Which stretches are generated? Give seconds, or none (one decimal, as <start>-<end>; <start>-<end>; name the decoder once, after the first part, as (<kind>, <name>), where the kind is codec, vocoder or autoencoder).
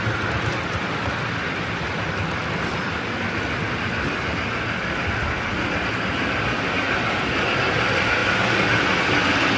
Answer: none